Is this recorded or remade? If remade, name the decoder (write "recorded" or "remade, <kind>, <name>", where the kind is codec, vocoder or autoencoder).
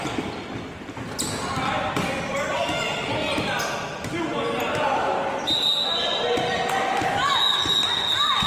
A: recorded